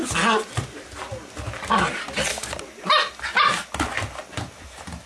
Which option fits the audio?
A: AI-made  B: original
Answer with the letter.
B